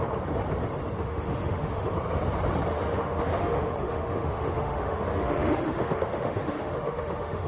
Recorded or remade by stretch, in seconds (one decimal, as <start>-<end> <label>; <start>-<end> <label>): 0.0-1.0 recorded; 1.0-1.9 remade; 1.9-2.7 recorded; 2.7-7.5 remade